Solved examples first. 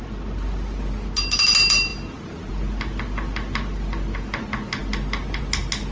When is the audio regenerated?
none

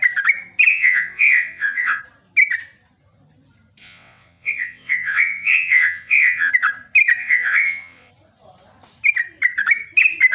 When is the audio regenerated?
0.7-2.0 (vocoder, WaveNeXt); 3.8-6.5; 7.2-8.1

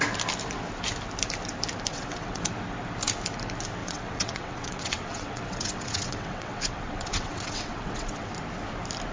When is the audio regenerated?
1.9-2.4 (vocoder, WaveNeXt); 3.8-8.3

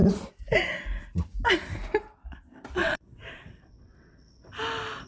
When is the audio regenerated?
2.8-4.5 (vocoder, WaveNeXt)

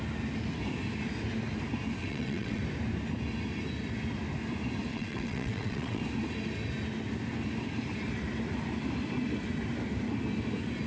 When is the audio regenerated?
2.0-2.6 (vocoder, WaveNeXt); 4.9-6.0

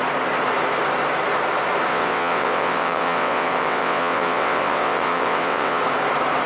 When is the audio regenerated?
1.9-5.8 (vocoder, WaveNeXt)